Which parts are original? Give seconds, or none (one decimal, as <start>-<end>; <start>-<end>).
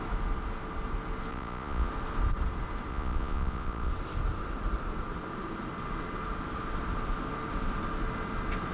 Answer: 0.0-1.3; 1.9-2.9; 3.9-8.7